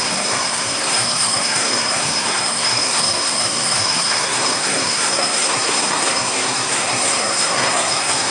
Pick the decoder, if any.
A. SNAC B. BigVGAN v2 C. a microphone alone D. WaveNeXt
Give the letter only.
A